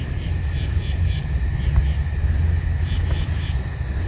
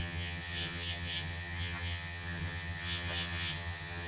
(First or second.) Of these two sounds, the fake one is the second